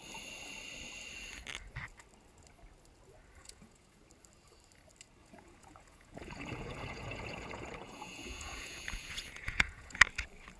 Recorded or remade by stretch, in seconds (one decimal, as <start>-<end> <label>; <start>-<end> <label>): 0.0-3.4 recorded; 3.4-4.0 remade; 4.0-5.2 recorded; 5.2-10.0 remade; 10.0-10.6 recorded